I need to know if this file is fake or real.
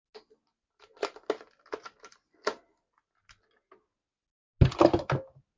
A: real